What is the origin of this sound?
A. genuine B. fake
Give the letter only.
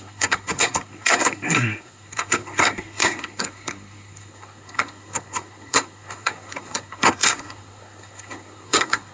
B